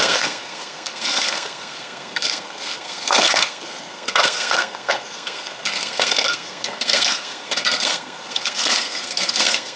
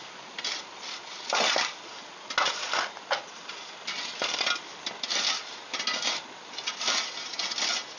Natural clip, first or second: second